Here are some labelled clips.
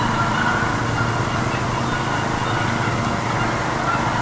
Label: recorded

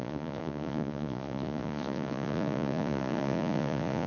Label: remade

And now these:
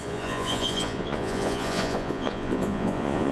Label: remade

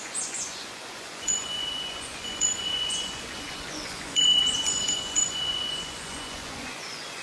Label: remade